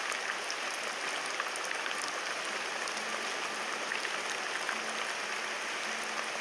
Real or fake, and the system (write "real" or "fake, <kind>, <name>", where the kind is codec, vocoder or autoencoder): real